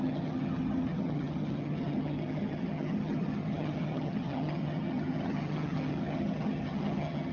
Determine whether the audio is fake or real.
fake